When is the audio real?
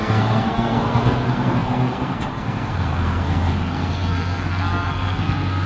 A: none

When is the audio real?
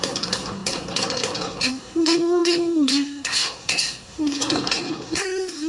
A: none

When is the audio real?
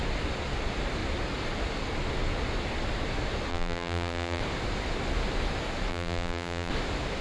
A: 0.0-3.5; 4.4-5.9; 6.7-7.2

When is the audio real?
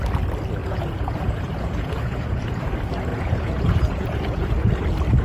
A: 0.0-0.6; 2.7-3.1; 4.7-5.2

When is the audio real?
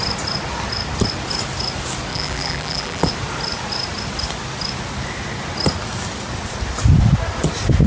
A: 0.0-2.1; 3.1-7.9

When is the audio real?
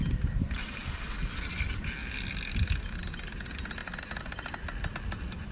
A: 0.0-5.5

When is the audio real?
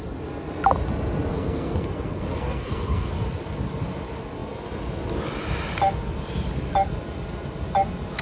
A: 0.0-1.3; 3.1-8.2